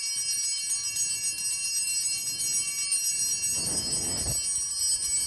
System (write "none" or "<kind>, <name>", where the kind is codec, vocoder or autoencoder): none